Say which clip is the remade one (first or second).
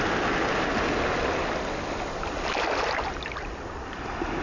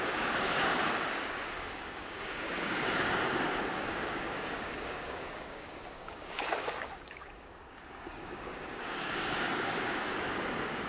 second